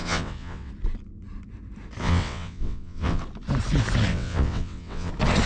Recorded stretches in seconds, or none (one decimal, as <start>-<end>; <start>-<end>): 0.7-2.0; 3.2-4.1; 5.1-5.5